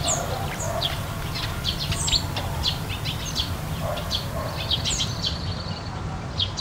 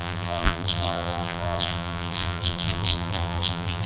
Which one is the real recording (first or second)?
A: first